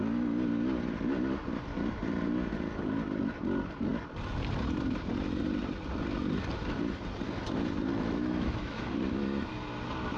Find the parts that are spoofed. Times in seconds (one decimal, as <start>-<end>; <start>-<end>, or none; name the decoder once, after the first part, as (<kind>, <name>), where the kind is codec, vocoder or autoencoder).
7.9-8.8 (autoencoder, DAC-VAE)